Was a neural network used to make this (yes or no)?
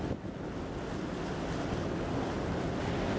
no